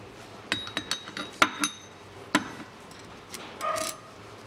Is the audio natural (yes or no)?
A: yes